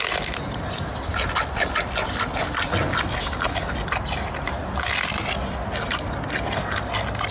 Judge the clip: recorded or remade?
recorded